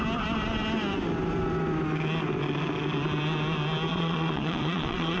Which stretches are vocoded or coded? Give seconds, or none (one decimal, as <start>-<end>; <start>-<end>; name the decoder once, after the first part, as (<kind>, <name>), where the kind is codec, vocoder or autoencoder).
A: 3.9-5.2 (vocoder, Vocos)